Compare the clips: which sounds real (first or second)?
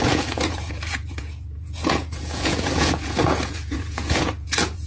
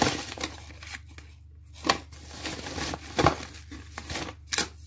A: second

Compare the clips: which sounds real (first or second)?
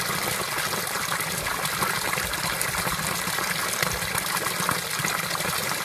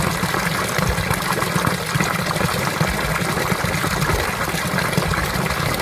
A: second